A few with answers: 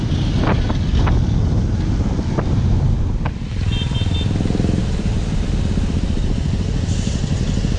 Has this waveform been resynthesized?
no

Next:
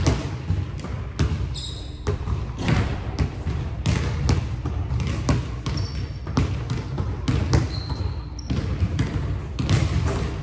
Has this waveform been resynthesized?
no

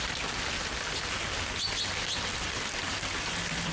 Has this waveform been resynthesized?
no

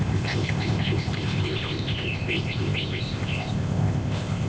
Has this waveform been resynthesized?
yes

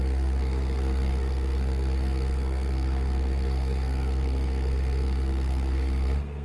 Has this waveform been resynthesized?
yes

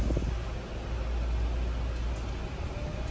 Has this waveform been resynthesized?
no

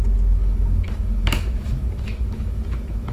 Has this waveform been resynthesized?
yes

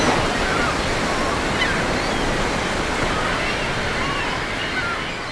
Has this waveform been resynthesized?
no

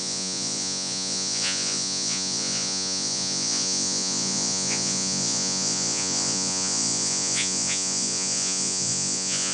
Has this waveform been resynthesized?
yes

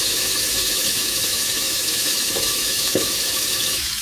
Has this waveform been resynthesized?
yes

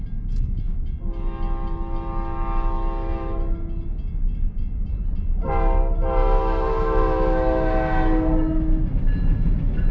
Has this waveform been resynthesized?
no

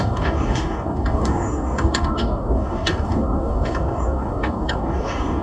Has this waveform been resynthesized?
yes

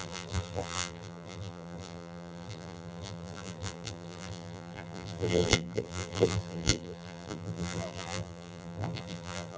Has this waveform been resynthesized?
yes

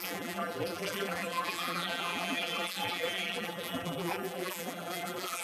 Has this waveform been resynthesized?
yes